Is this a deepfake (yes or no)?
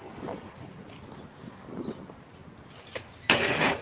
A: no